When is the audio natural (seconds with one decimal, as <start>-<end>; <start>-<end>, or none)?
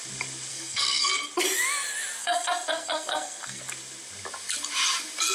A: 0.0-0.5; 1.1-2.2; 3.6-5.3